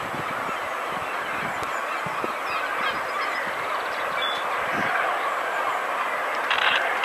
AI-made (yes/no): no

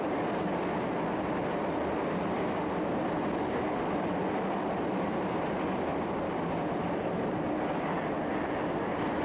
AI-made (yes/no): no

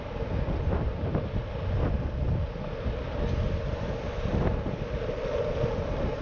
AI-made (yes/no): no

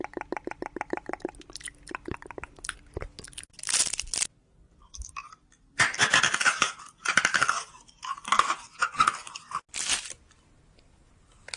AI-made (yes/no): no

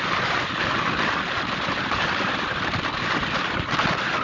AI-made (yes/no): no